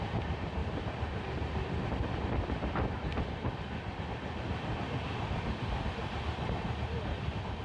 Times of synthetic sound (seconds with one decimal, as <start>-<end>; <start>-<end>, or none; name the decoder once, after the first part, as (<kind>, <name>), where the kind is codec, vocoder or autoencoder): 0.6-4.0 (vocoder, BigVGAN v2); 4.7-6.2